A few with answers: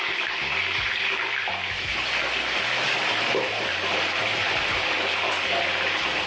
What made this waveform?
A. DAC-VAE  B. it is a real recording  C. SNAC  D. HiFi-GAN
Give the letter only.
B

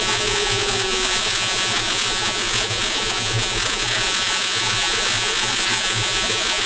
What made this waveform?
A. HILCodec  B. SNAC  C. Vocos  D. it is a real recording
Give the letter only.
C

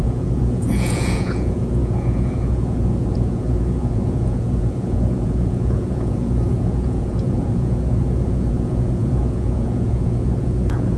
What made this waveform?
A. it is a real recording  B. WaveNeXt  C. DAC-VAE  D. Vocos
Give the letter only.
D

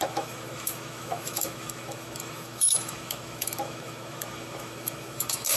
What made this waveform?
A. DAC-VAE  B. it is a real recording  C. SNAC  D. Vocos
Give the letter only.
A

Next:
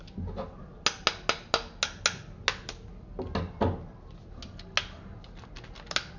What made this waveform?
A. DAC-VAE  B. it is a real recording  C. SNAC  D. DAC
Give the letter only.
B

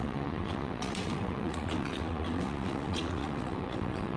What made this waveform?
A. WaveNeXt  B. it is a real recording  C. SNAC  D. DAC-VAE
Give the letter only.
A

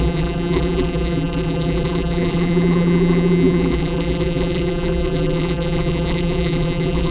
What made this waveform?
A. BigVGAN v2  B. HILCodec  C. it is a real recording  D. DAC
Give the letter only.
A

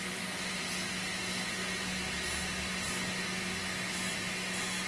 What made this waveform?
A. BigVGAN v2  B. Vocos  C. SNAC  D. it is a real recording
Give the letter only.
D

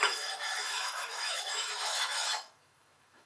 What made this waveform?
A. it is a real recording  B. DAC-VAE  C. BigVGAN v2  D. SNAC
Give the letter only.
B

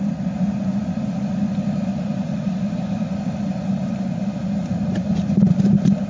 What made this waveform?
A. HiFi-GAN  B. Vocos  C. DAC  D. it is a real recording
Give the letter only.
D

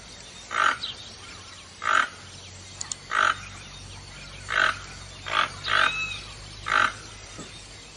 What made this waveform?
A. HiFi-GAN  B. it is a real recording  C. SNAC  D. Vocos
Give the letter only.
B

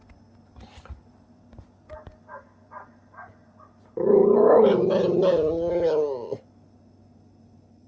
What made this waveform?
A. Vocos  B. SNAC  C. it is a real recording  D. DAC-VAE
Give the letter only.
C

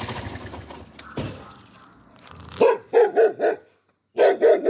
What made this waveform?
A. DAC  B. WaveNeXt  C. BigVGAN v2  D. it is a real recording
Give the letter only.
D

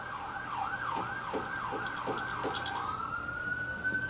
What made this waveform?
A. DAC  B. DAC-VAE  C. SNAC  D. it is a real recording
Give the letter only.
D